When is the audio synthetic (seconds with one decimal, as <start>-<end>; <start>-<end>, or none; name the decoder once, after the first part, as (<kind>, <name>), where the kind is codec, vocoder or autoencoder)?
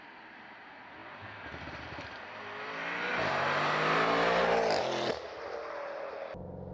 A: none